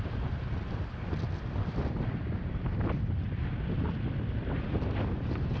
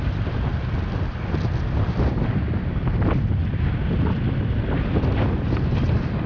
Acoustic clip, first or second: second